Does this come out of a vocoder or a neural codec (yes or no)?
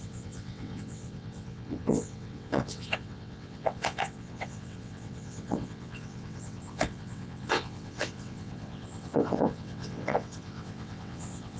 yes